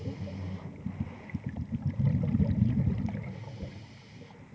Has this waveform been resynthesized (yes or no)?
no